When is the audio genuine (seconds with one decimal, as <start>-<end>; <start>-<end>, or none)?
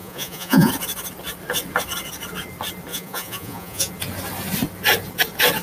0.7-2.9; 3.9-5.6